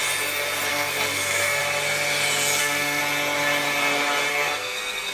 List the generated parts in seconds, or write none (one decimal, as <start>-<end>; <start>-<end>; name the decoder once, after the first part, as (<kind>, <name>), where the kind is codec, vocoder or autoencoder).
0.7-1.6 (codec, SNAC); 2.6-3.0; 4.3-5.1